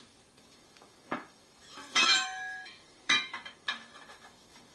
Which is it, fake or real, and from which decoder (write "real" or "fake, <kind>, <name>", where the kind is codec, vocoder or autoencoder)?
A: fake, autoencoder, DAC-VAE